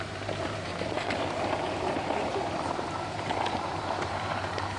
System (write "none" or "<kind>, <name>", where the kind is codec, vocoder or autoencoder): vocoder, BigVGAN v2